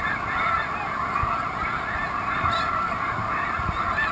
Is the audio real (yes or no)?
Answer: yes